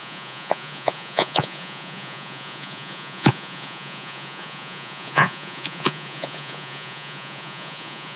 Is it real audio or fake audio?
fake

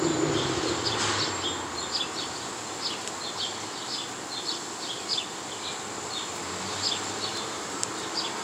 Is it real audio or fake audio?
real